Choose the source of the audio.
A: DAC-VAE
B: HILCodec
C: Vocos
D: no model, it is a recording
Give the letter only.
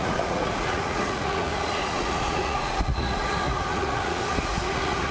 C